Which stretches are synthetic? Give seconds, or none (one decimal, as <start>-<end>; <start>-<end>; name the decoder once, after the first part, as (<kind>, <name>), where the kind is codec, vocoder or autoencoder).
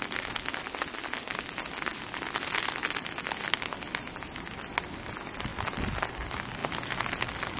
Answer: none